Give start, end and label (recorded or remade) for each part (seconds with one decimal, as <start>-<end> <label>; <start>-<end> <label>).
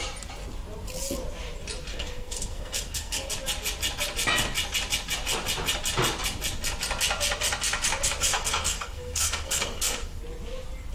0.0-1.9 recorded; 1.9-3.3 remade; 3.3-8.3 recorded; 8.3-10.2 remade; 10.2-10.9 recorded